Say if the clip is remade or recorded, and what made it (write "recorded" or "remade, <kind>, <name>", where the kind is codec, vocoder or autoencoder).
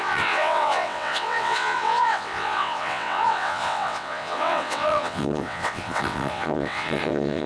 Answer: remade, vocoder, WaveNeXt